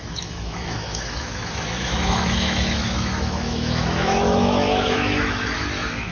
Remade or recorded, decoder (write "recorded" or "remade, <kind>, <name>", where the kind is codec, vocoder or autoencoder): remade, autoencoder, DAC-VAE